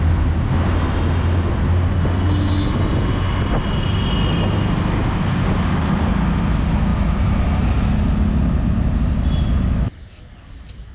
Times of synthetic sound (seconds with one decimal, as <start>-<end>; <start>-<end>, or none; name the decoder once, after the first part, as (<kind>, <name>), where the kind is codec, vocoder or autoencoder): none